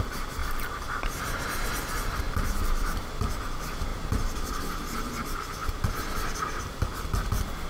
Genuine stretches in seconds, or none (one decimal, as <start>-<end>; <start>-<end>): 0.0-0.4; 3.1-3.9; 4.7-7.7